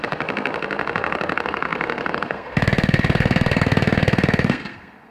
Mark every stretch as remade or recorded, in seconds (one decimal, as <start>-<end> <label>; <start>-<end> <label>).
0.0-5.1 remade